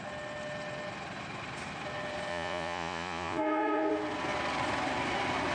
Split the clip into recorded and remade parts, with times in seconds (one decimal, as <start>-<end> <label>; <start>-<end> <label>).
0.0-2.3 recorded; 2.3-3.9 remade; 3.9-5.5 recorded